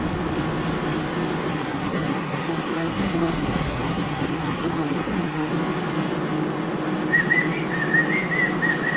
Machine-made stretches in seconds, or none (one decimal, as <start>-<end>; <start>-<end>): 1.5-5.5